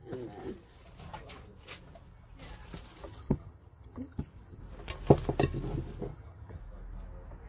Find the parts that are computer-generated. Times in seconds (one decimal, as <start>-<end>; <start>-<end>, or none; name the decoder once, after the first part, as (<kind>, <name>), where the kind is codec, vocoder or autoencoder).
3.1-4.6 (vocoder, HiFi-GAN); 6.1-6.6

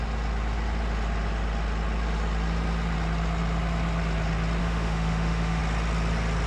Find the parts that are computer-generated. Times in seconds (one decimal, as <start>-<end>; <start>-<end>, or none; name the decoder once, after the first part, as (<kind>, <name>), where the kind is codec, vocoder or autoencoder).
4.6-5.6 (autoencoder, DAC-VAE)

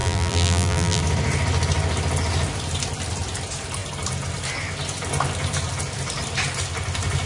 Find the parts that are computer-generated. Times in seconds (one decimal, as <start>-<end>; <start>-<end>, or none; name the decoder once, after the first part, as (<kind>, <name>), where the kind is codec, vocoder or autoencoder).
0.0-1.0 (vocoder, BigVGAN v2)